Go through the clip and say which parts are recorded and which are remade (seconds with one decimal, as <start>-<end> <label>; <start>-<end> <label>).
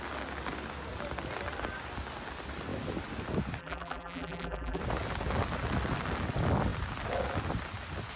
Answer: 0.0-3.6 recorded; 3.6-4.8 remade; 4.8-8.2 recorded